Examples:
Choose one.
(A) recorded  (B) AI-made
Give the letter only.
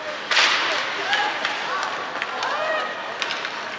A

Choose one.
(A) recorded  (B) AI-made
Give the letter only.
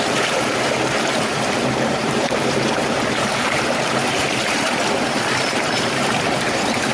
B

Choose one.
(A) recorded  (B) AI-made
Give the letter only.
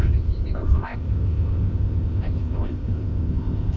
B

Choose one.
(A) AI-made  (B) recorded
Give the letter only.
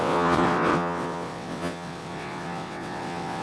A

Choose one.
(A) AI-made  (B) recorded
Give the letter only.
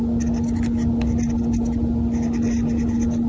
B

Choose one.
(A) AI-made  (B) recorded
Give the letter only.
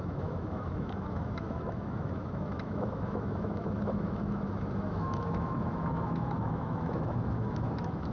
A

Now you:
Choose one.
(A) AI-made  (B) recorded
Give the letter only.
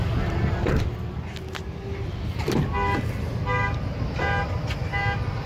B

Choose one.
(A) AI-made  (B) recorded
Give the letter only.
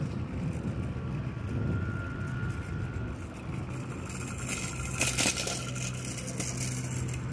B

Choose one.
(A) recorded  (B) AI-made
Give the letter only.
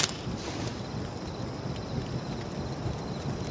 A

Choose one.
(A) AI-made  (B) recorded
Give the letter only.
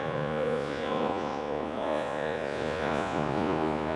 A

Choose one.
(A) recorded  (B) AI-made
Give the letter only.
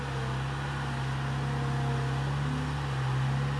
A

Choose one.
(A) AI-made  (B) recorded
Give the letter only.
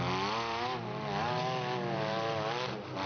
B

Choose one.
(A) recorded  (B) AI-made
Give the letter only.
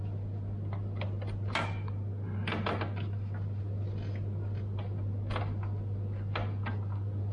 A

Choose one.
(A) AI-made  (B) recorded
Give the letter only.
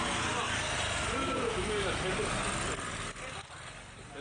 B